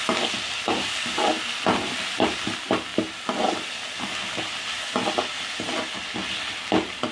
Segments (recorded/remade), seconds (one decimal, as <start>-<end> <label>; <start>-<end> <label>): 0.0-7.1 recorded